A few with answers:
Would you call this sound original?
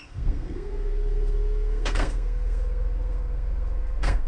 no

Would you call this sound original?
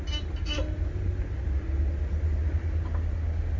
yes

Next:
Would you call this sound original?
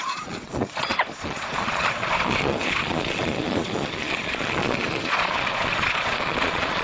no